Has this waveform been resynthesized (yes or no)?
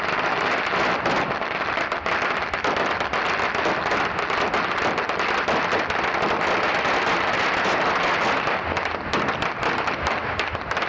no